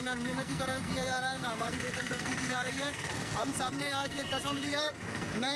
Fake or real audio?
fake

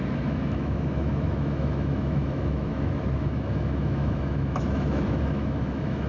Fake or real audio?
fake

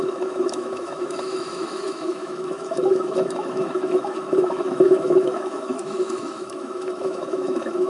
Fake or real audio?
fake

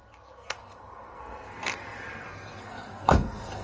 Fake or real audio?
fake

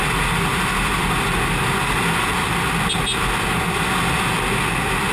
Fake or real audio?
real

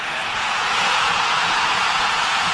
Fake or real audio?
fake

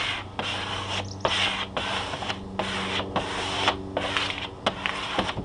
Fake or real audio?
real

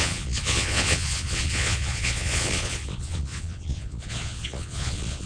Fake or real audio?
fake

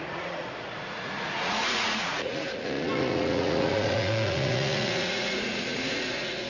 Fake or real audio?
fake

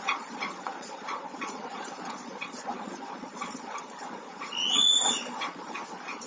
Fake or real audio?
fake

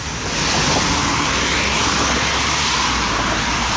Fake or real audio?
real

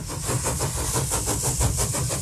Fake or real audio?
real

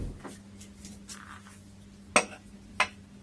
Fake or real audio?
real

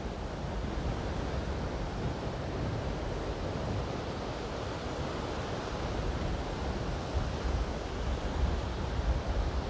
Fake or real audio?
real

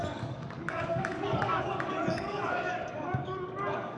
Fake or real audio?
fake